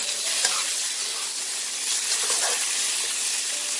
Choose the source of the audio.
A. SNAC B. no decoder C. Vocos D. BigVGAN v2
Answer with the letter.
B